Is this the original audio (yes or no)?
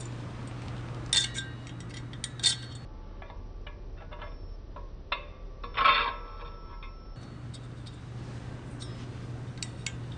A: yes